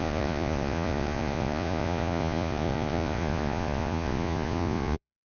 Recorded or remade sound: remade